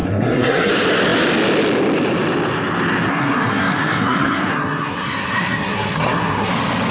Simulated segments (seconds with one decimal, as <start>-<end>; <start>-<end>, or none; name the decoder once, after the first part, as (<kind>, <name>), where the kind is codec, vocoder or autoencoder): 0.0-0.7 (codec, SNAC); 3.1-6.5